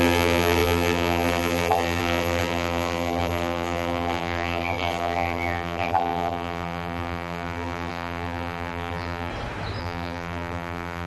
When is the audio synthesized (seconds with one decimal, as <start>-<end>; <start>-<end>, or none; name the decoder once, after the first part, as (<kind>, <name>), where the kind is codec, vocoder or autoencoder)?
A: 0.0-9.3 (vocoder, BigVGAN v2); 9.8-11.1